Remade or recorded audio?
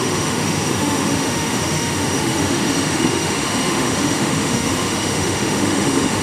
remade